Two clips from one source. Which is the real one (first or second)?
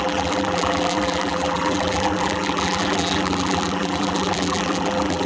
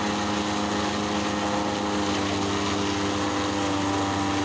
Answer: second